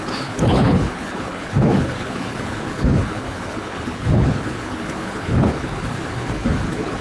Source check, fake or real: fake